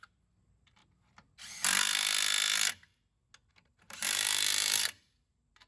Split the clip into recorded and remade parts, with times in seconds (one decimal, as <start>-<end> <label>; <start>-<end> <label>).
0.0-0.8 remade; 0.8-3.5 recorded; 3.5-5.7 remade